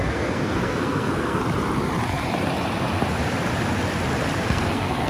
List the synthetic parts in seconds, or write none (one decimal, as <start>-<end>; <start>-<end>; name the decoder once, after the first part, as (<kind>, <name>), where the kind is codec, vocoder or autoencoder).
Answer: 0.0-1.4 (codec, SNAC); 4.5-5.1